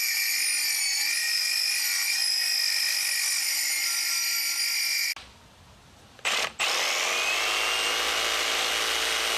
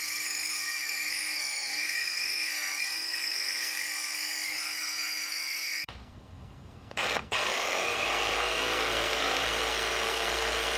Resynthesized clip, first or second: second